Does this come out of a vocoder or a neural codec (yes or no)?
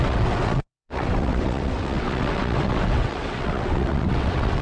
yes